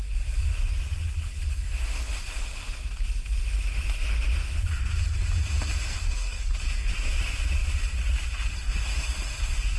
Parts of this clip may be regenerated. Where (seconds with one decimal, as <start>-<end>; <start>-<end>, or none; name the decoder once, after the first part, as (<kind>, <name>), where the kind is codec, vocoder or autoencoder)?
5.9-6.5 (codec, SNAC)